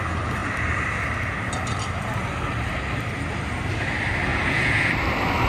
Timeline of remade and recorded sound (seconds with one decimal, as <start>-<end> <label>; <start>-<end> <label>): 0.0-4.3 recorded; 4.3-4.8 remade; 4.8-5.5 recorded